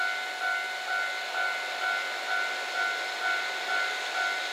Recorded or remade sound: recorded